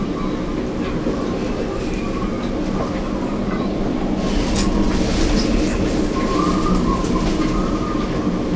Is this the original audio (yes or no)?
yes